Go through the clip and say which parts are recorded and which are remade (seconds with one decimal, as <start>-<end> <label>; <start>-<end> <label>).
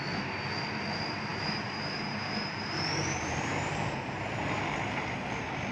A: 0.0-1.3 recorded; 1.3-4.4 remade; 4.4-5.7 recorded